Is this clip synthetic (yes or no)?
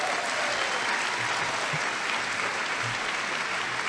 no